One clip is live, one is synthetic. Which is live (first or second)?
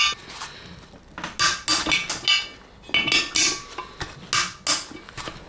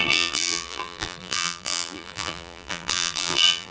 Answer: first